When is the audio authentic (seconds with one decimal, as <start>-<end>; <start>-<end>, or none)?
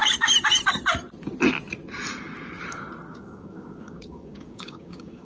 0.0-3.1